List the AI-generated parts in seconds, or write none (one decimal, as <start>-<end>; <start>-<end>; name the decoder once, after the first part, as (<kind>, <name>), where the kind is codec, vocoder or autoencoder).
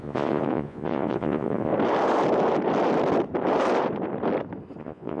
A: 0.0-1.7 (vocoder, Vocos); 4.8-5.2